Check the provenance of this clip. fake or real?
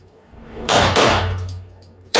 fake